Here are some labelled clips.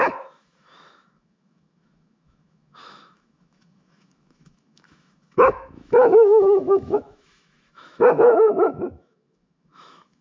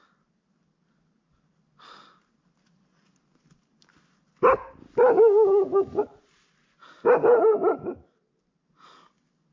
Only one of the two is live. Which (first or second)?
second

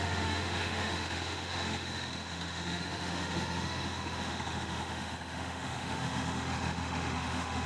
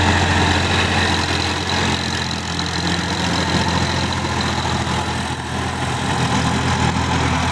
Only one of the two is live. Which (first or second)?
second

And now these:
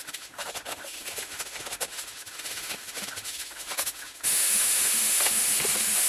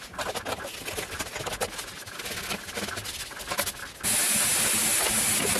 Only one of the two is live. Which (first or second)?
second